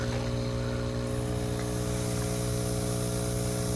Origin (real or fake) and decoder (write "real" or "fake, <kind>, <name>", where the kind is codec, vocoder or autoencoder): real